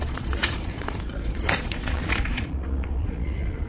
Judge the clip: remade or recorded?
remade